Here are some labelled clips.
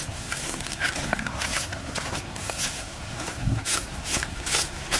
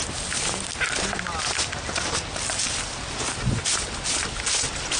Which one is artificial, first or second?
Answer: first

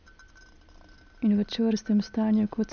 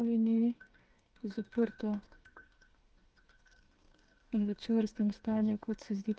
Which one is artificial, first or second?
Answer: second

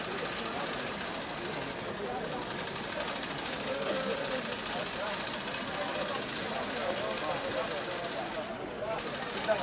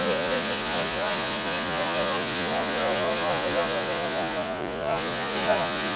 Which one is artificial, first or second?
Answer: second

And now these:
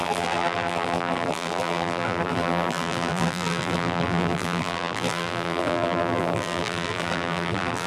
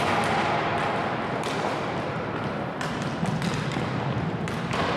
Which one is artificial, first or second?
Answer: first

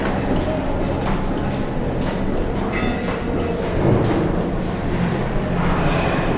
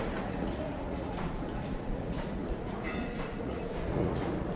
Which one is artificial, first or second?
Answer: second